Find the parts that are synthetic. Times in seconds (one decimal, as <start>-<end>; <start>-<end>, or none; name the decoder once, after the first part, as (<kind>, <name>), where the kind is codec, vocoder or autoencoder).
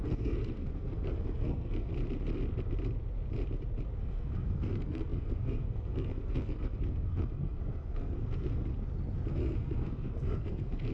0.0-1.9 (codec, SNAC); 4.0-8.7; 9.3-10.9